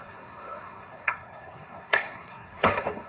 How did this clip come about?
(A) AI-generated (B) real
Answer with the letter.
A